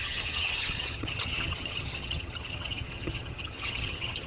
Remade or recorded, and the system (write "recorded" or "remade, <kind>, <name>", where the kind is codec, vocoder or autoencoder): remade, vocoder, HiFi-GAN